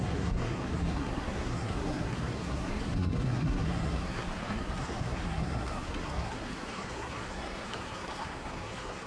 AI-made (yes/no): yes